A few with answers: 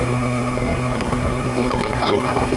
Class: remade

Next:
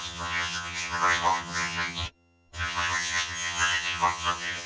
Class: remade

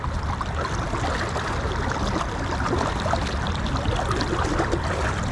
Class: recorded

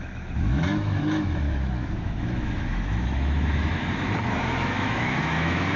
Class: remade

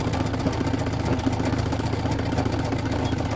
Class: recorded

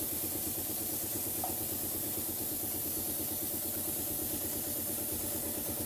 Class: recorded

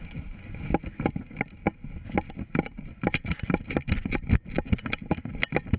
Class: recorded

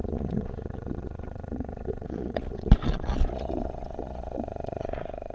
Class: remade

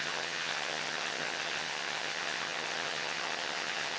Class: remade